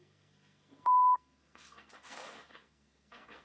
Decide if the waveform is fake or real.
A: fake